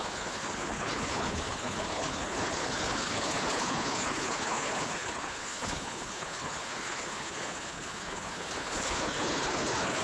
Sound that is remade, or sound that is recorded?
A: remade